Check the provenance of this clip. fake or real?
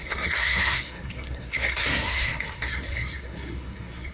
fake